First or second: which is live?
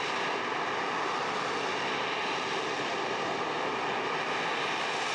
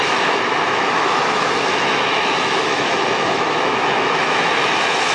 first